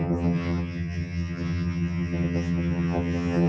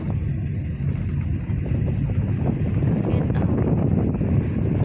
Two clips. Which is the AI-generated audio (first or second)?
first